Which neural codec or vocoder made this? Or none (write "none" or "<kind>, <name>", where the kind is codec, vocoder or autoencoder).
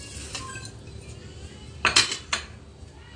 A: none